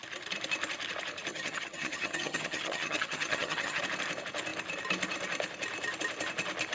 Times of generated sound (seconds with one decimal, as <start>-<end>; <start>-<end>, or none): 1.3-3.8